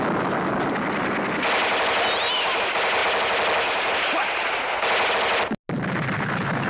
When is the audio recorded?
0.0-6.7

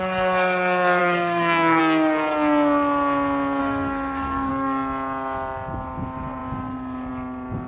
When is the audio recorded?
0.0-1.0; 1.8-3.6; 4.5-7.7